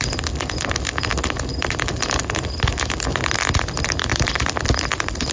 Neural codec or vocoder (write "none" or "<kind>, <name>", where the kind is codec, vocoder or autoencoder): none